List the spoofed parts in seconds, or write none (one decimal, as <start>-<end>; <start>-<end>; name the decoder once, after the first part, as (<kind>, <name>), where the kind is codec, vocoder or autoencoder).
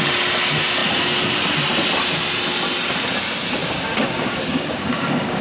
3.6-5.4 (codec, DAC)